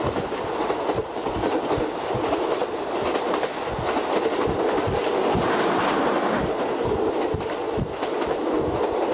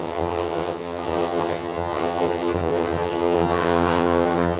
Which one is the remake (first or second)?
second